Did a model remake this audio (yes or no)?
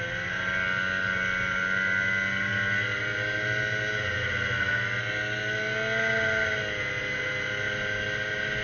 no